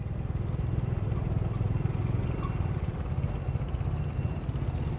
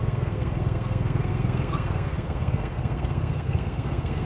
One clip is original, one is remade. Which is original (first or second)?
first